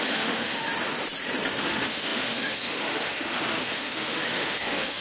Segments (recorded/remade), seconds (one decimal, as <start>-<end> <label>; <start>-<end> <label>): 0.0-0.7 remade; 0.7-1.6 recorded; 1.6-5.0 remade